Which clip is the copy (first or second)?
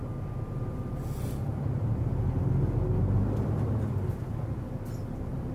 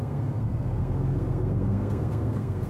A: second